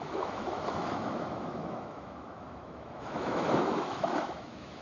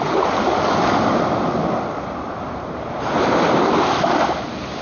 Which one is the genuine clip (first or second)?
second